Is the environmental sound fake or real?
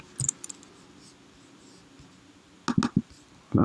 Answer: real